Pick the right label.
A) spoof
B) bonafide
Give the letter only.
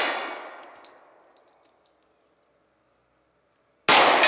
B